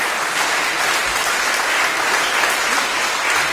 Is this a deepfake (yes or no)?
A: no